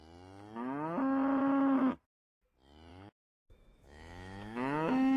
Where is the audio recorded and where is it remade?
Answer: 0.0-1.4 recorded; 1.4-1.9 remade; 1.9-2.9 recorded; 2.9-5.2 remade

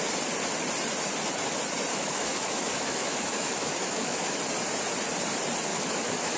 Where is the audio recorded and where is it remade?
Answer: 0.0-1.9 recorded; 1.9-4.4 remade; 4.4-5.7 recorded; 5.7-6.4 remade